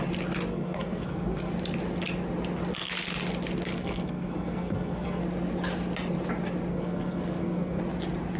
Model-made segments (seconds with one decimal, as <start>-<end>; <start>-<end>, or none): 0.5-1.5; 3.7-5.2; 6.7-7.8